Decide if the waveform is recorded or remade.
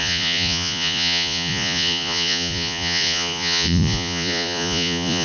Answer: remade